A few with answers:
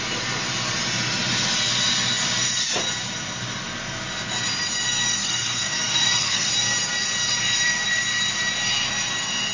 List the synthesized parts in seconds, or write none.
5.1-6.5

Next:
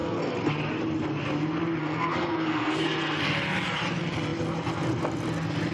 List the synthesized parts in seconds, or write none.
0.0-0.5; 1.8-3.3